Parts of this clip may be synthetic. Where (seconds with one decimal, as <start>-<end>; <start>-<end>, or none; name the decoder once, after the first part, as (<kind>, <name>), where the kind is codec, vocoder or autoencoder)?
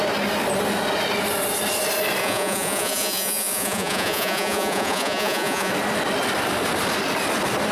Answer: 2.2-5.7 (vocoder, Vocos)